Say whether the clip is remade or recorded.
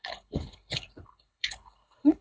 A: remade